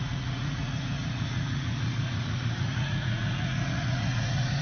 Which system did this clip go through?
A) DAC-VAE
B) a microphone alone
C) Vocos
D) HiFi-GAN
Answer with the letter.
C